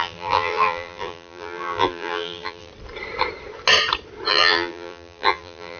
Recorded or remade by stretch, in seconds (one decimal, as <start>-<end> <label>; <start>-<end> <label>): 0.0-2.7 remade; 2.7-4.3 recorded; 4.3-5.8 remade